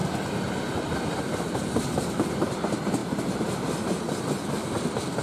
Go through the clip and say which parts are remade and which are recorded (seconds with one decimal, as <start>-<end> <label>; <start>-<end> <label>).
0.0-0.8 recorded; 0.8-3.0 remade; 3.0-4.2 recorded; 4.2-5.2 remade